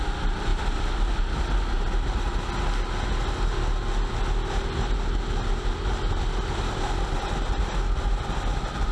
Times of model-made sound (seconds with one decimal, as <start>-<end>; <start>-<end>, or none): none